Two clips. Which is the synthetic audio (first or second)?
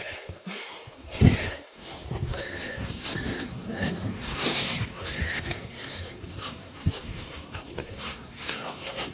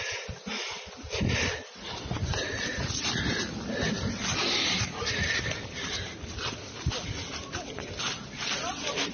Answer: first